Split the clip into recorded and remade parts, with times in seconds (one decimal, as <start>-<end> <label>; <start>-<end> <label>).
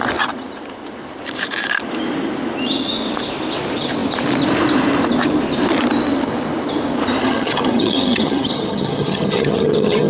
0.0-7.2 recorded; 7.2-10.1 remade